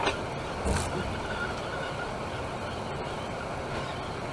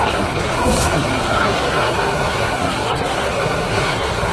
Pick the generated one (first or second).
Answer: second